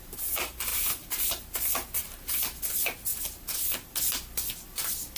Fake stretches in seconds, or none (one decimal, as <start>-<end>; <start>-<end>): 0.7-2.2